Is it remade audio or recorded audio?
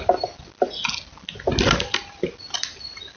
recorded